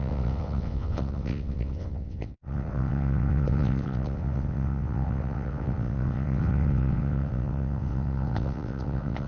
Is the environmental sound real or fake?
fake